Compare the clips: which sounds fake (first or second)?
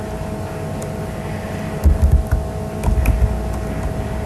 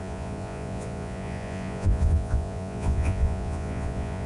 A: second